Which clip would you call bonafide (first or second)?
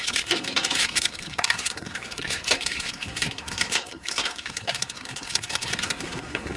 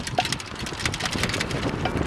second